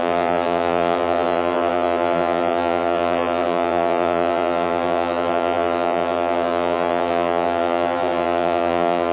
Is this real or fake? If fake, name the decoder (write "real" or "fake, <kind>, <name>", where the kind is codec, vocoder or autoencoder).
fake, vocoder, BigVGAN v2